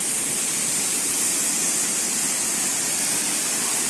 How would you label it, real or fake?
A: real